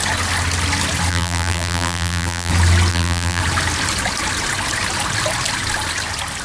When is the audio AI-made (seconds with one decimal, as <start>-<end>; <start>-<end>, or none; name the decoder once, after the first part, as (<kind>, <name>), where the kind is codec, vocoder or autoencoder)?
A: 1.1-2.5 (vocoder, BigVGAN v2); 2.9-3.4